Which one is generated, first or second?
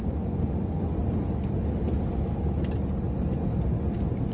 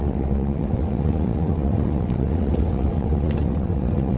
second